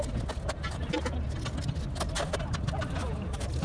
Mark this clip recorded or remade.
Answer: recorded